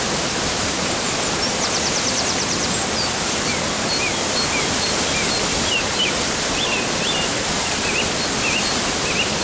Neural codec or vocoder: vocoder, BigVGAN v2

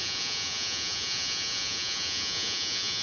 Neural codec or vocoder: vocoder, Vocos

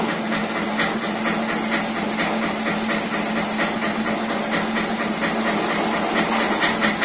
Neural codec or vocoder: none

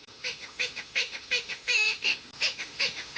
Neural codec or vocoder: autoencoder, DAC-VAE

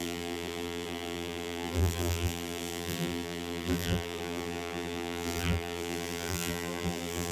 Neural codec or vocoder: vocoder, BigVGAN v2